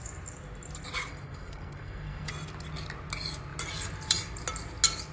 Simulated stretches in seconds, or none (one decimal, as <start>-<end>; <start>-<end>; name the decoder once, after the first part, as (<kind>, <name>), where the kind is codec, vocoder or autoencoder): 1.1-2.3 (codec, SNAC)